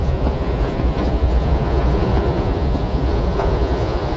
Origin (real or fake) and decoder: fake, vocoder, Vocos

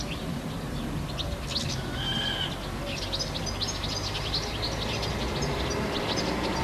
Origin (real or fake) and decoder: real